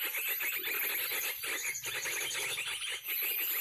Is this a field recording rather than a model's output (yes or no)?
yes